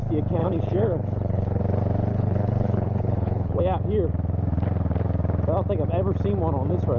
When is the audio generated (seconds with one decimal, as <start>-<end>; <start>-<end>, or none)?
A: 0.4-1.6; 2.1-3.6

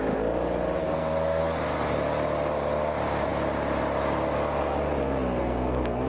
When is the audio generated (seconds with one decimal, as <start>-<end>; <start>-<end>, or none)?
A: 0.8-1.4; 5.4-6.1

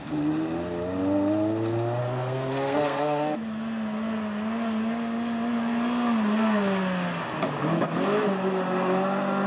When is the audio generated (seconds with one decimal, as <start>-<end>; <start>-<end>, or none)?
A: 2.0-3.4